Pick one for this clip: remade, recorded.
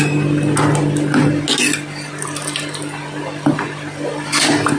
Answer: recorded